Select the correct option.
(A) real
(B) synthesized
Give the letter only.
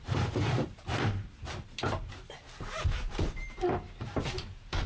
B